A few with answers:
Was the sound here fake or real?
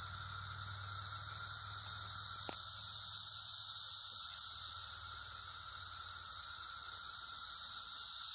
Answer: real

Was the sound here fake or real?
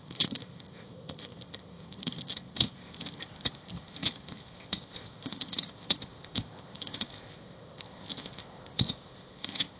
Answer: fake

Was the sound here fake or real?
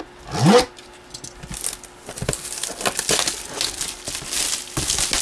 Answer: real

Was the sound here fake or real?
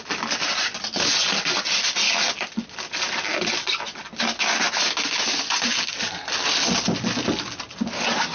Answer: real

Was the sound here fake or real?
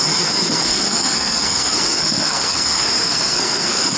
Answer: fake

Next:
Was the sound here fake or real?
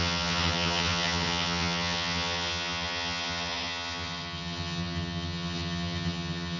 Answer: fake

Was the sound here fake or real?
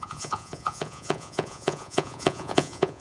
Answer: fake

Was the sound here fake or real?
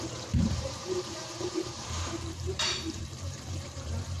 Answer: fake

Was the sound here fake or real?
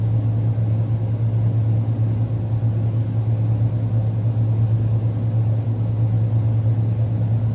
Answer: real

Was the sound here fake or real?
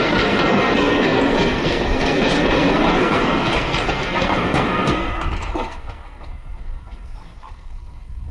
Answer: fake